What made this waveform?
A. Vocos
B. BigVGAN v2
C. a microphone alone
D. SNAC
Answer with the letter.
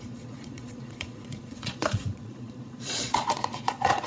A